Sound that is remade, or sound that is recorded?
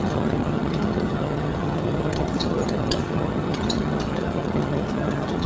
remade